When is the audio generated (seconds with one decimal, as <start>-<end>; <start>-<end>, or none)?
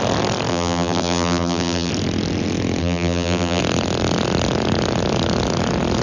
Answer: 0.5-1.9; 2.8-3.6